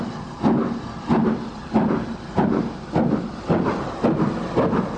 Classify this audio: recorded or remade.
recorded